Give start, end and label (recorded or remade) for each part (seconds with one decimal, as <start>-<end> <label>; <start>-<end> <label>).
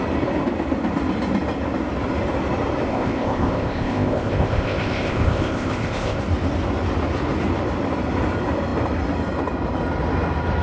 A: 0.0-2.9 recorded; 2.9-6.2 remade; 6.2-10.6 recorded